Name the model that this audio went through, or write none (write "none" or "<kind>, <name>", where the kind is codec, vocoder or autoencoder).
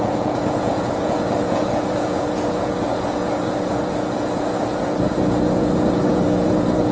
vocoder, Vocos